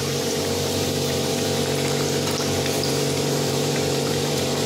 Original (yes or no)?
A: no